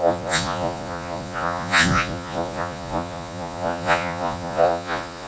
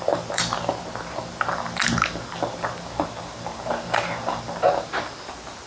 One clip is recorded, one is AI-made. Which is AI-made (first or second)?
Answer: first